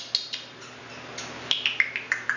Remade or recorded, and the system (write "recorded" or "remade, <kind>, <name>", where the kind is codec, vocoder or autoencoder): recorded